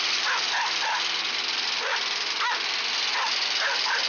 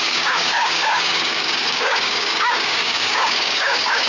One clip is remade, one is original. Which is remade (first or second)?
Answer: second